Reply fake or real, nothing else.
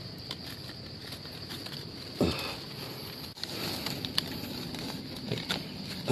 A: real